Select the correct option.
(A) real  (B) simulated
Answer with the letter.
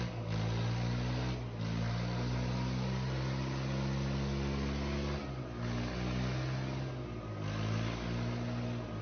A